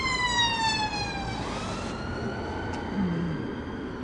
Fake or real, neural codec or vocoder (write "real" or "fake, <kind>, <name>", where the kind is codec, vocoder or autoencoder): real